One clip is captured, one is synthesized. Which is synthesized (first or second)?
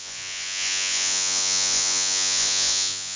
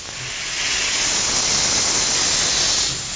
first